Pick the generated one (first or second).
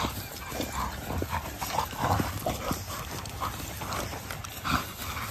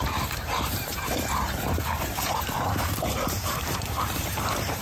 second